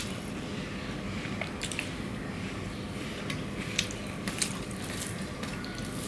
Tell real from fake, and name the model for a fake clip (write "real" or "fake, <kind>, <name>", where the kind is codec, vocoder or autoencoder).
real